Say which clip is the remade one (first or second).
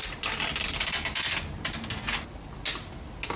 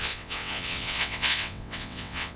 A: second